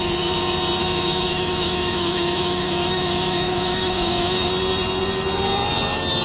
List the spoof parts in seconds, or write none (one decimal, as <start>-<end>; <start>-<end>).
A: 0.8-4.5